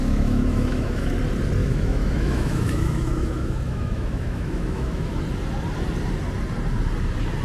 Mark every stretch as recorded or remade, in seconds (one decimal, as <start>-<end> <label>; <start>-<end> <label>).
0.0-1.1 remade; 1.1-1.6 recorded; 1.6-5.2 remade; 5.2-7.4 recorded